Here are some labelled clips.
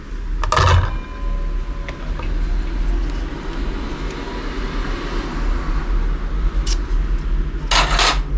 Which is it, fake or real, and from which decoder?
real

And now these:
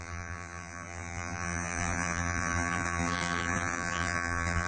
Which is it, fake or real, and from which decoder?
fake, vocoder, BigVGAN v2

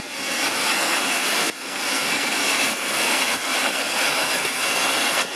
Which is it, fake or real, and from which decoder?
fake, codec, SNAC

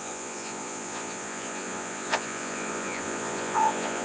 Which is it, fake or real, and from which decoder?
fake, vocoder, Vocos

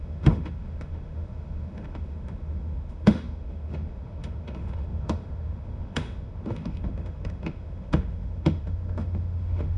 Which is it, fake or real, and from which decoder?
fake, autoencoder, DAC-VAE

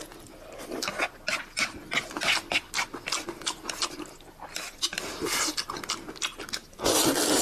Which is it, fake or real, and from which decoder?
real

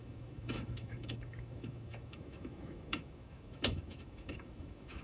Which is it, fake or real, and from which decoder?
fake, autoencoder, DAC-VAE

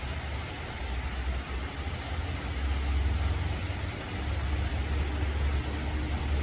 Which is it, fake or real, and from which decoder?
real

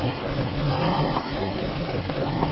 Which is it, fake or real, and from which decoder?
fake, codec, SNAC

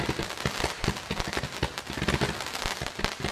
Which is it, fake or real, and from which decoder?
real